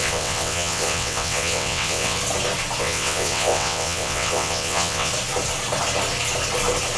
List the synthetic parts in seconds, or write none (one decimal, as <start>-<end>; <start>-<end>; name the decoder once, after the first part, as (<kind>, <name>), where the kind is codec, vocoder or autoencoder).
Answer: 0.0-2.2 (vocoder, WaveNeXt); 2.8-5.1